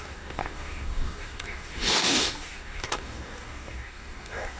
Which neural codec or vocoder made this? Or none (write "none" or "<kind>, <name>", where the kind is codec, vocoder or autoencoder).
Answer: codec, DAC